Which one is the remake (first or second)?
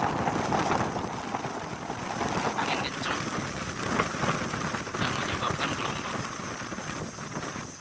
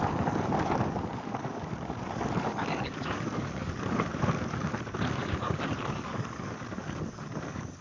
second